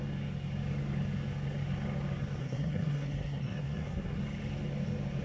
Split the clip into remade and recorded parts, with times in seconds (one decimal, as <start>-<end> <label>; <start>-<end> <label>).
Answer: 0.0-2.4 recorded; 2.4-4.2 remade; 4.2-5.2 recorded

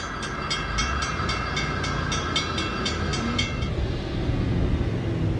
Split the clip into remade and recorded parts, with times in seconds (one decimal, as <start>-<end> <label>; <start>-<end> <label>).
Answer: 0.0-5.4 recorded